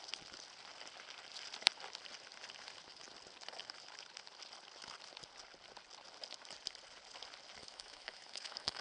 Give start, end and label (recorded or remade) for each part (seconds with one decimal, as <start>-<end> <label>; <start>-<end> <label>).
0.0-7.6 recorded; 7.6-8.8 remade